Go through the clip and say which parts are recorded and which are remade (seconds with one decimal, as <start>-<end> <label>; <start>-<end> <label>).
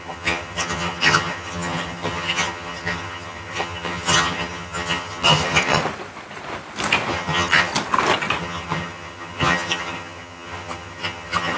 0.0-5.8 remade; 5.8-7.1 recorded; 7.1-7.7 remade; 7.7-8.4 recorded; 8.4-11.6 remade